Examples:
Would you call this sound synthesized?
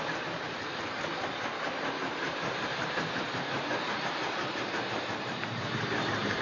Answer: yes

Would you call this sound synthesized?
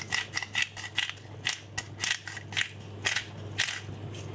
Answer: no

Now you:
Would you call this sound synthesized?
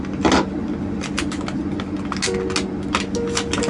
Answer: no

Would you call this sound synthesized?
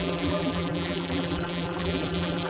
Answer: yes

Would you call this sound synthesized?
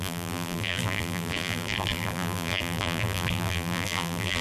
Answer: yes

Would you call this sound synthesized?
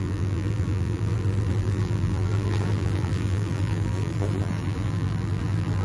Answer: yes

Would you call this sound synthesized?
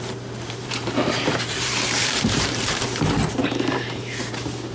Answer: yes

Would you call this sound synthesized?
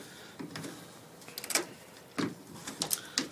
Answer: no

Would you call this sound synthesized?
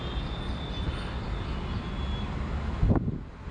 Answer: no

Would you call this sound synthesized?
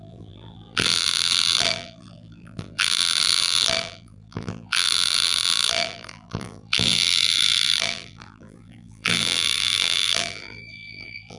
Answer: yes